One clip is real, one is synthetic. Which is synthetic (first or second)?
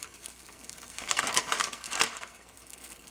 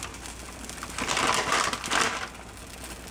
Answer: first